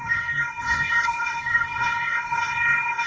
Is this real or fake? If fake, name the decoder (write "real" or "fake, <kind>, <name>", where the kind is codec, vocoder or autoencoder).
fake, codec, SNAC